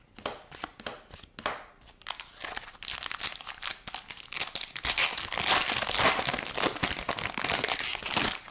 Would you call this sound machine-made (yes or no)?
no